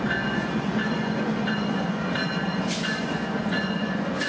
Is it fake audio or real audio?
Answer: fake